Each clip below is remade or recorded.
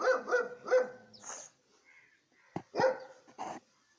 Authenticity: recorded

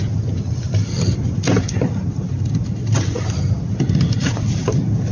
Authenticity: recorded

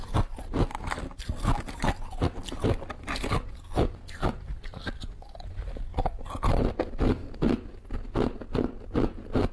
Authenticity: recorded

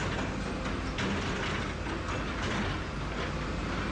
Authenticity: recorded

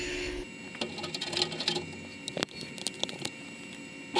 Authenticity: recorded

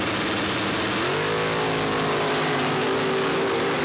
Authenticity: recorded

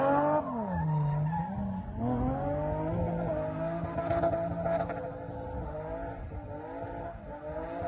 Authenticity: recorded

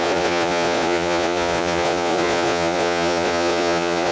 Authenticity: remade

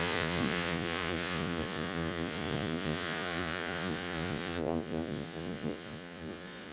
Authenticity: remade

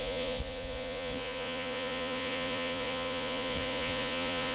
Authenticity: remade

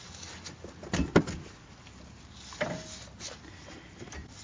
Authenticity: recorded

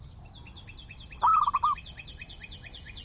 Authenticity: recorded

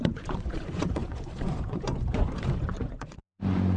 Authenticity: remade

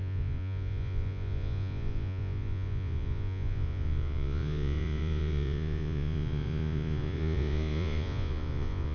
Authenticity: remade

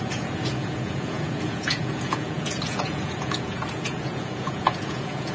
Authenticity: remade